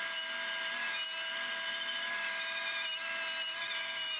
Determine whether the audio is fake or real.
real